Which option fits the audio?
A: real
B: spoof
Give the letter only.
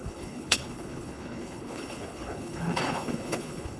B